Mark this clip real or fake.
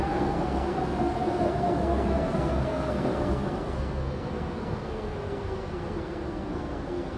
fake